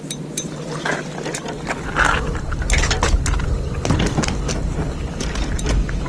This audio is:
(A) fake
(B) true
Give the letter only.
B